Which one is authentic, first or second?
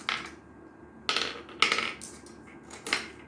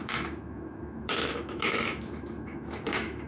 first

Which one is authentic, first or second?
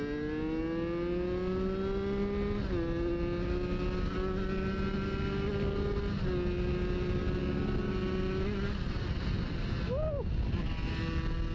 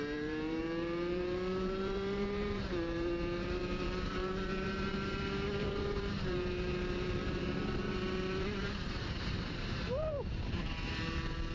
first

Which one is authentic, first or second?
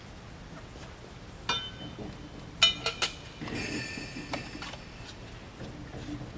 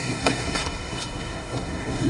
first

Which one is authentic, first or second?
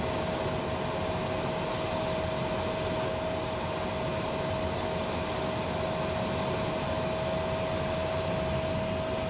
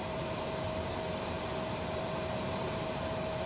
first